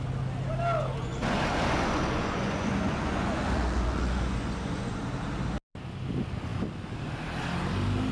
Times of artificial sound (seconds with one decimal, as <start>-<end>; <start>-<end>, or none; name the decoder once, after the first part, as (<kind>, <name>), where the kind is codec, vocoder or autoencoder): 1.0-5.0 (vocoder, Vocos)